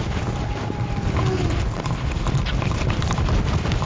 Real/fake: real